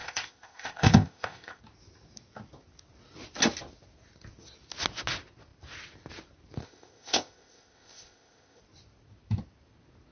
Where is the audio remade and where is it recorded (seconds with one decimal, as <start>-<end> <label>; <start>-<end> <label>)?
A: 0.0-1.6 remade; 1.6-6.6 recorded; 6.6-8.6 remade; 8.6-10.1 recorded